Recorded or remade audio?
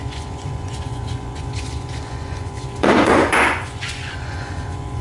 remade